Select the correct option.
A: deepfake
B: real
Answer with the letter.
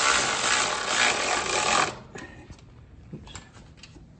B